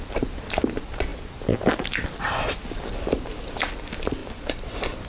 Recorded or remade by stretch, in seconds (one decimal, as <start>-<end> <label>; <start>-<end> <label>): 0.0-4.2 recorded; 4.2-5.1 remade